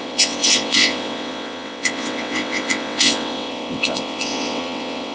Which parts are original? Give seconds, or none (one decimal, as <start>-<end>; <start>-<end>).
none